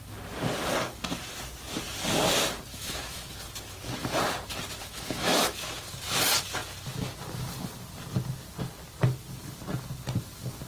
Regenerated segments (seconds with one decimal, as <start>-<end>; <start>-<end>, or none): 2.7-3.3; 4.8-5.7